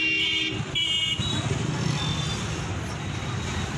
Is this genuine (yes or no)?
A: yes